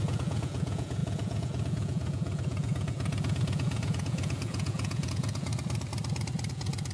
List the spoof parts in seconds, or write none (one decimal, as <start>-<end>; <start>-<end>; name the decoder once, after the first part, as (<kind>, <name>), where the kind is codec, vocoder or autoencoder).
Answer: 0.0-5.5 (vocoder, Vocos); 6.5-6.9